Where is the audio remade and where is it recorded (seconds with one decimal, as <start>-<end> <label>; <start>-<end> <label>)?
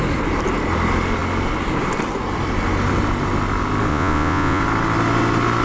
0.0-3.9 recorded; 3.9-4.6 remade; 4.6-5.6 recorded